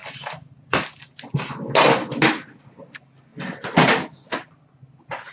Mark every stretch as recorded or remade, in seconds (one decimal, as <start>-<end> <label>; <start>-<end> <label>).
0.0-5.3 recorded